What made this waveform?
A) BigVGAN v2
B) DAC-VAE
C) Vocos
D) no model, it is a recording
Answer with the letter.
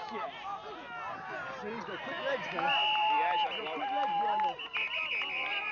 D